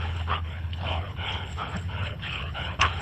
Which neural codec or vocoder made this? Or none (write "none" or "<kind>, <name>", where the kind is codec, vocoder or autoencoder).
codec, HILCodec